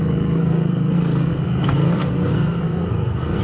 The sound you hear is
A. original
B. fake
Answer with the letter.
B